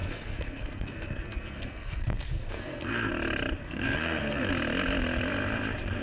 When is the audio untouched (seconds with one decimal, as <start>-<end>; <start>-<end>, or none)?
3.1-3.6; 4.5-6.0